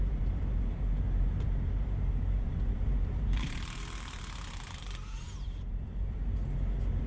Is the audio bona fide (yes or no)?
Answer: no